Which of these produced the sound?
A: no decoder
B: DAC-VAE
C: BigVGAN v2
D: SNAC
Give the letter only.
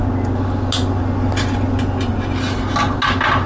A